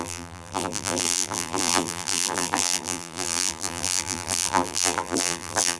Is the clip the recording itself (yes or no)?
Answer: no